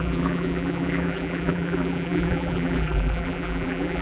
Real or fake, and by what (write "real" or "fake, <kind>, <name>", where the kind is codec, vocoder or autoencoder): fake, vocoder, BigVGAN v2